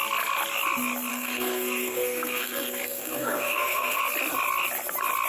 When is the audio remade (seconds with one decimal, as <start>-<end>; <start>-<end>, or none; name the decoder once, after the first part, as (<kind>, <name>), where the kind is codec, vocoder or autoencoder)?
1.1-4.0 (codec, SNAC)